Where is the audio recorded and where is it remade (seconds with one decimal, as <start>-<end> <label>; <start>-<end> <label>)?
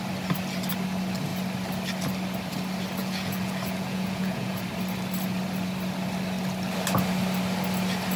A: 0.0-3.0 recorded; 3.0-4.6 remade; 4.6-8.2 recorded